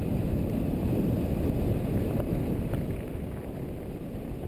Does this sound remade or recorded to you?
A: recorded